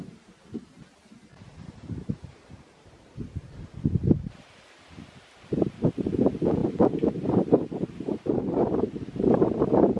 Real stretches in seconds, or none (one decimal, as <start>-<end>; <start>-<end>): none